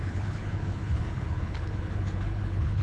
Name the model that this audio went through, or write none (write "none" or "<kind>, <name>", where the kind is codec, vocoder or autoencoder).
codec, HILCodec